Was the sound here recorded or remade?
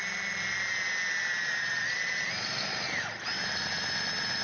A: recorded